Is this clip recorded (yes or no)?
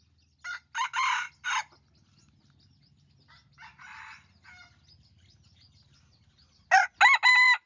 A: yes